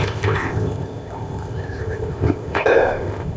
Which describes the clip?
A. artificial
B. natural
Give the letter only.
A